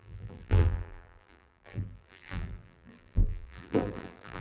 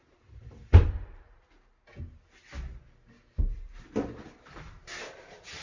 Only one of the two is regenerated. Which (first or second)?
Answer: first